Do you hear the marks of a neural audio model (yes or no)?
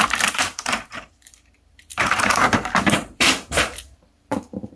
yes